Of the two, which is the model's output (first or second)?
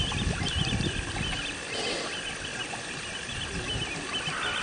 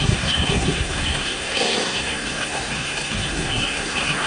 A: second